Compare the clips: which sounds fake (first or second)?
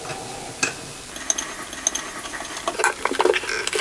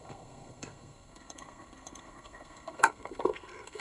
second